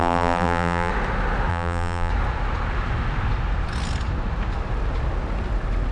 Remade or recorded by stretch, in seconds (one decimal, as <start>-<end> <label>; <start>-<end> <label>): 0.0-0.9 remade; 0.9-1.5 recorded; 1.5-2.1 remade; 2.1-5.9 recorded